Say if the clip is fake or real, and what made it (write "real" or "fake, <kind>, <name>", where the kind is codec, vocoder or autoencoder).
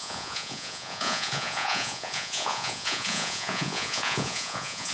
fake, vocoder, Vocos